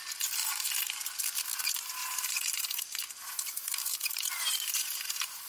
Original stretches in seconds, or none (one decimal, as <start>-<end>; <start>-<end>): 0.0-0.4; 1.2-2.0